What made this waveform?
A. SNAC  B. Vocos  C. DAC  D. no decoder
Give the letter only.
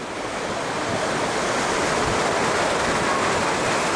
D